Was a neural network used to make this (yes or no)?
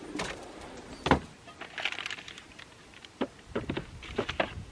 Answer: no